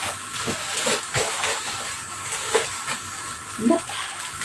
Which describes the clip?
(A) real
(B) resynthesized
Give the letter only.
B